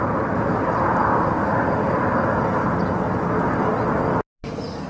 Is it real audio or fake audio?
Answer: real